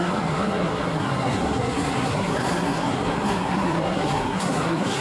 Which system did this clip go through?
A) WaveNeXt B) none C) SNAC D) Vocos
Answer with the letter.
C